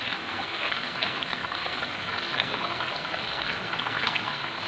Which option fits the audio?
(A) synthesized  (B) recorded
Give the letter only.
A